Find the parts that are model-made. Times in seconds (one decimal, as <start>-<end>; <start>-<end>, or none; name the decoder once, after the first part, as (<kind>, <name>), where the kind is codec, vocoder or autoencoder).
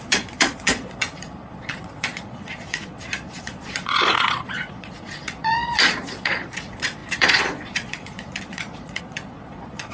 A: 0.0-9.9 (vocoder, Vocos)